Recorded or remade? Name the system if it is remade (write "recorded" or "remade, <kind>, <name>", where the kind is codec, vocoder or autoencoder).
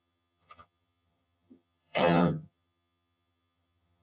remade, vocoder, HiFi-GAN